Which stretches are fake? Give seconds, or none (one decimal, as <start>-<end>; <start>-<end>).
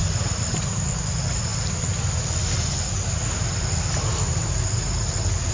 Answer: none